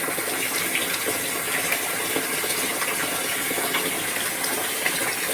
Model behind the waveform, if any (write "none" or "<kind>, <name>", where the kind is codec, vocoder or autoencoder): none